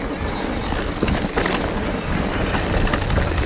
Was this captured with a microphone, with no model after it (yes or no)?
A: yes